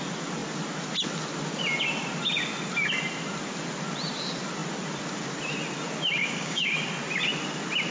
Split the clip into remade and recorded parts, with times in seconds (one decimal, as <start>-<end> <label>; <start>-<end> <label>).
0.0-6.2 recorded; 6.2-6.7 remade; 6.7-7.9 recorded